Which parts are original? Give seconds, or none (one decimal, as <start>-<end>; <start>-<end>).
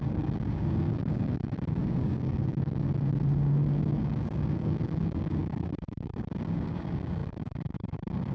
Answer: none